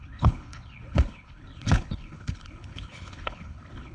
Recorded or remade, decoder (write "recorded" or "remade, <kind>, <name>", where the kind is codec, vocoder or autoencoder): remade, codec, HILCodec